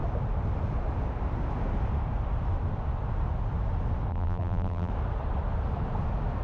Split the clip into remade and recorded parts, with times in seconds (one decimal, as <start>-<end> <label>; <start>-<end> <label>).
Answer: 0.0-4.1 recorded; 4.1-4.9 remade; 4.9-6.4 recorded